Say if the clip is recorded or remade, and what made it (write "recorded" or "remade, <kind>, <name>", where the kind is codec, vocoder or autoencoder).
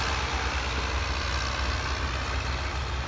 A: recorded